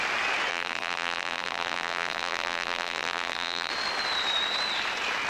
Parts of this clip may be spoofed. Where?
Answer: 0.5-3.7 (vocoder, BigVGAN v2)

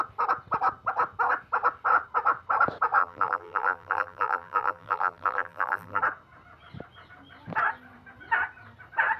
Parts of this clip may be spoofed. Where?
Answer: 3.0-6.0 (vocoder, BigVGAN v2)